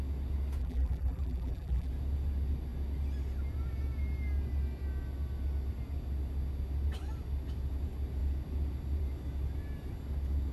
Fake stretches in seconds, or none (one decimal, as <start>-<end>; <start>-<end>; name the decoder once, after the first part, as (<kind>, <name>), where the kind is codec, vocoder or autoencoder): 0.6-1.9 (vocoder, BigVGAN v2)